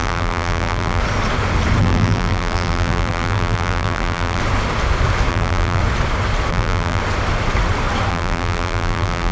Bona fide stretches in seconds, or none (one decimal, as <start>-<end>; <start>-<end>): 1.0-1.8; 4.4-5.3; 5.8-6.5; 7.0-8.1

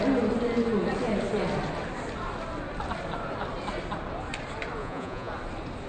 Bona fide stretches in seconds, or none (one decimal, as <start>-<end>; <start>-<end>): 0.0-4.8; 5.3-5.9